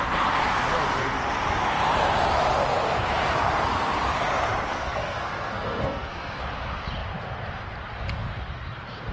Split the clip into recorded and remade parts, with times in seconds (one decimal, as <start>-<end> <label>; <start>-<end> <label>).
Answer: 0.0-4.7 recorded; 4.7-6.4 remade; 6.4-9.1 recorded

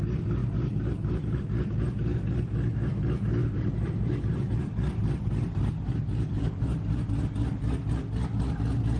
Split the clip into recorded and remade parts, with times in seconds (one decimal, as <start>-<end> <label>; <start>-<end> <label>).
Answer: 0.0-0.4 recorded; 0.4-1.4 remade; 1.4-3.4 recorded; 3.4-7.1 remade; 7.1-9.0 recorded